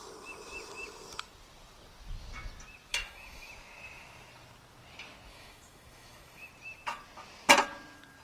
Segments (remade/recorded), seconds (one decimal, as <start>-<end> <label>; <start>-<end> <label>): 0.0-2.9 recorded; 2.9-3.5 remade; 3.5-5.3 recorded; 5.3-6.5 remade; 6.5-8.2 recorded